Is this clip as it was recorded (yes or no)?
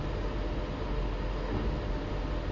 yes